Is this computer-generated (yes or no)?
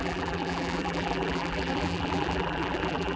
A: yes